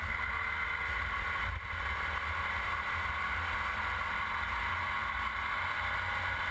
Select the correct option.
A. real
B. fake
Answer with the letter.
A